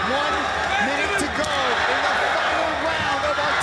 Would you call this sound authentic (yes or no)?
yes